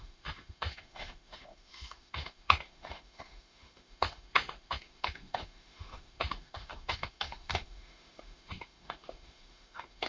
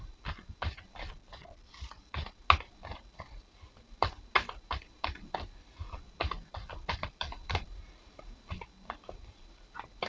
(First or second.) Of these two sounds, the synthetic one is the first